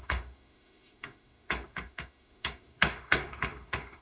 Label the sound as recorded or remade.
remade